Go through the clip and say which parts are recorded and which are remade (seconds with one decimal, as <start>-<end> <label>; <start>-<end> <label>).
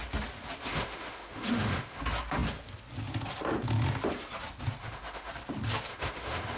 0.0-0.7 recorded; 0.7-2.0 remade; 2.0-4.8 recorded; 4.8-5.3 remade; 5.3-5.9 recorded; 5.9-6.6 remade